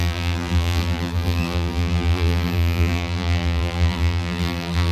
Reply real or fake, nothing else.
fake